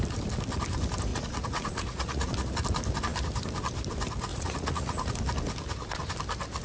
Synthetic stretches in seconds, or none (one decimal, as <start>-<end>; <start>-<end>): 1.1-2.3; 4.3-5.1